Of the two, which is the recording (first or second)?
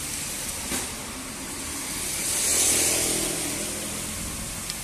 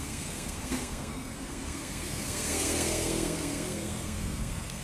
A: first